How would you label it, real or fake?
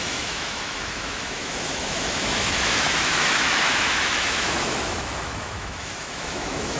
fake